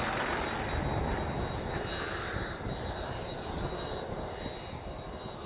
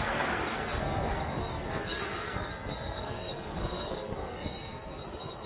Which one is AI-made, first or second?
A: second